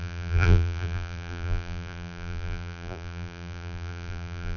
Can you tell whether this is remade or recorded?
remade